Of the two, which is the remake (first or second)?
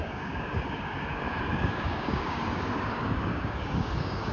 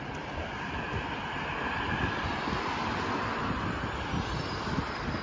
first